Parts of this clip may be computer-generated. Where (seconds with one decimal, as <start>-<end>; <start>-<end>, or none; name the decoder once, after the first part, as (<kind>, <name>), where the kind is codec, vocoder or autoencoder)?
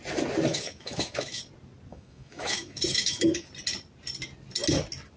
0.5-1.4 (autoencoder, DAC-VAE); 1.9-3.5